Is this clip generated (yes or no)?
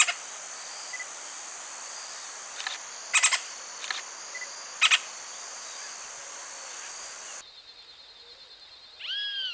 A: no